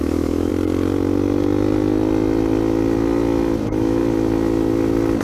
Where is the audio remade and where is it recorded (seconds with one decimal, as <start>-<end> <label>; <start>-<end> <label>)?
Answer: 0.0-0.5 remade; 0.5-3.6 recorded; 3.6-4.0 remade; 4.0-5.2 recorded

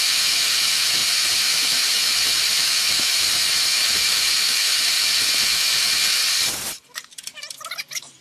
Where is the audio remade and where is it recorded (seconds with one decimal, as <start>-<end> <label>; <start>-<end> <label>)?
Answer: 0.0-6.2 remade; 6.2-8.2 recorded

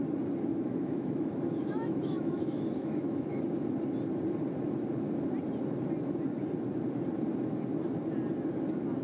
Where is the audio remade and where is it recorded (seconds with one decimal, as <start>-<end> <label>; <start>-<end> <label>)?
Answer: 0.0-0.5 recorded; 0.5-3.4 remade; 3.4-9.0 recorded

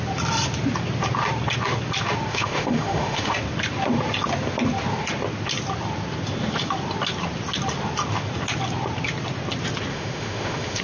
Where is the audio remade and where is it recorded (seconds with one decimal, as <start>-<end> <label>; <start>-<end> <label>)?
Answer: 0.0-2.3 recorded; 2.3-3.3 remade; 3.3-9.9 recorded; 9.9-10.8 remade

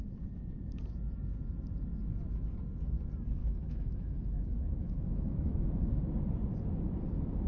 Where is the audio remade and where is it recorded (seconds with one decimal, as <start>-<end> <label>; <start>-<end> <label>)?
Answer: 0.0-3.4 recorded; 3.4-6.0 remade; 6.0-7.5 recorded

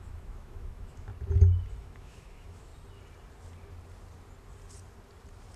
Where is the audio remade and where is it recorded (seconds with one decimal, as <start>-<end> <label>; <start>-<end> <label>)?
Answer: 0.0-1.1 remade; 1.1-1.8 recorded; 1.8-2.7 remade; 2.7-5.6 recorded

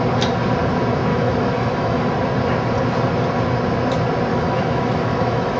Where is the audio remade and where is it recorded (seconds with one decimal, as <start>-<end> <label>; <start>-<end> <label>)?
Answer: 0.0-1.1 recorded; 1.1-2.1 remade; 2.1-4.3 recorded; 4.3-5.6 remade